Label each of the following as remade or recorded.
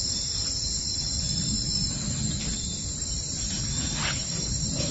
remade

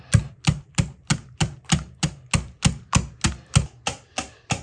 recorded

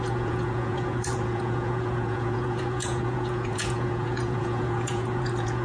remade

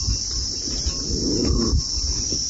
recorded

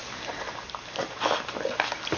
recorded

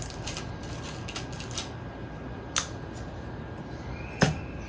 recorded